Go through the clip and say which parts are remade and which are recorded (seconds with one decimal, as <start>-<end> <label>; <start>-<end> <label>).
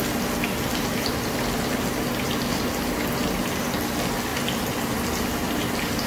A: 0.0-0.7 recorded; 0.7-2.2 remade; 2.2-4.3 recorded; 4.3-6.1 remade